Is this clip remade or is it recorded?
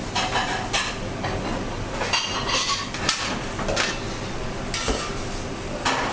recorded